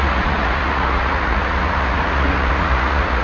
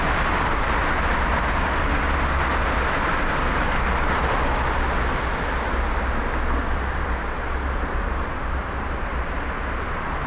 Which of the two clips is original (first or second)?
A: second